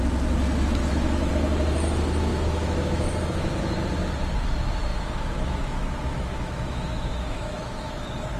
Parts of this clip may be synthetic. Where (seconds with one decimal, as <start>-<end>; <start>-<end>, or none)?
0.8-1.3; 2.3-3.5; 4.9-7.9